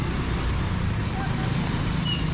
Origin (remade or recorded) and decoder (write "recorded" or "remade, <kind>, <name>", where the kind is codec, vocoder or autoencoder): remade, vocoder, BigVGAN v2